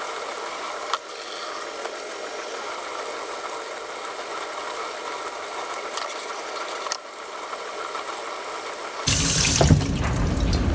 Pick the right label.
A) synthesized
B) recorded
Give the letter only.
B